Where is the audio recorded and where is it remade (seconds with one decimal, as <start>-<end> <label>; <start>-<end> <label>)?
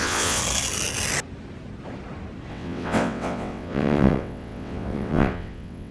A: 0.0-0.4 remade; 0.4-2.5 recorded; 2.5-5.9 remade